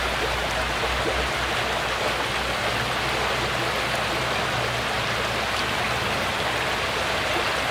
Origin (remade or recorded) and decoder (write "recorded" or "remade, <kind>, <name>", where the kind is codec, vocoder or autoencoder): recorded